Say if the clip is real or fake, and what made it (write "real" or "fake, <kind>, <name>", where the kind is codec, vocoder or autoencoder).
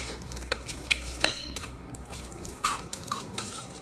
fake, codec, SNAC